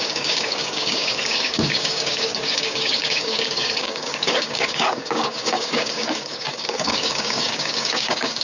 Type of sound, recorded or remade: remade